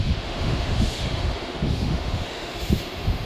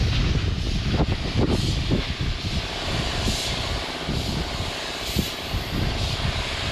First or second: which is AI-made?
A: first